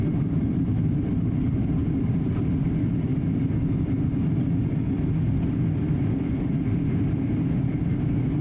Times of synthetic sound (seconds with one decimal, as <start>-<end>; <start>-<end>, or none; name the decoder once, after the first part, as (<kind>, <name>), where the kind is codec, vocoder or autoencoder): none